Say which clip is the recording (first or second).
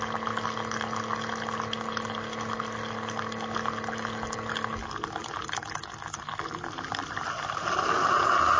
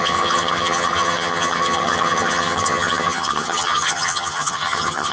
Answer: first